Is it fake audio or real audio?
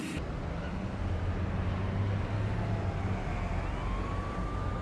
real